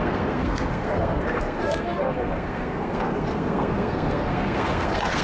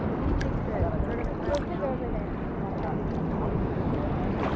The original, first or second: second